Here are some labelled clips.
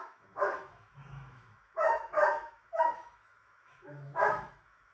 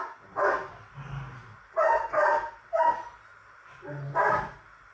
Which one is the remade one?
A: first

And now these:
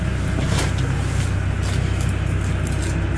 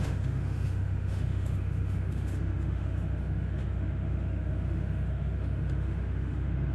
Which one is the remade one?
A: second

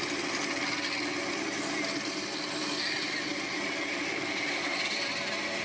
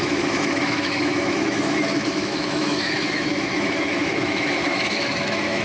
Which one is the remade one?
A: second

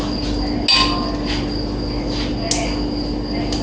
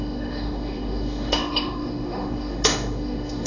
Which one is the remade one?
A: second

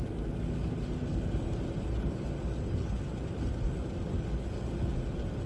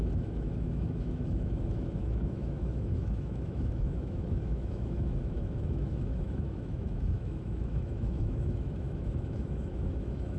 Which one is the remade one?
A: second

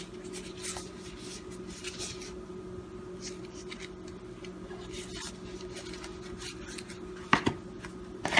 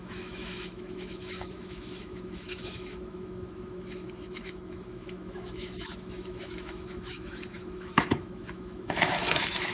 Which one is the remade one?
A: second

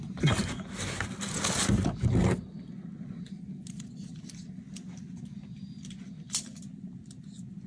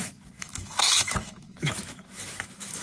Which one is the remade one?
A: second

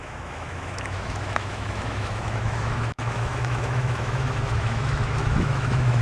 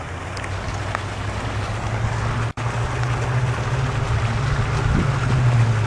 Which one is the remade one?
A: first